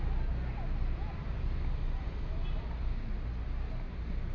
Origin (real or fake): real